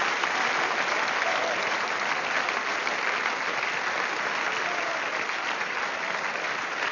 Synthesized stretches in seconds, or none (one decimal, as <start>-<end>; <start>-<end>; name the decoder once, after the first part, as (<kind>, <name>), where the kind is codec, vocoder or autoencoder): none